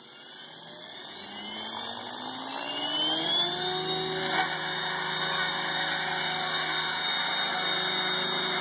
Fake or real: real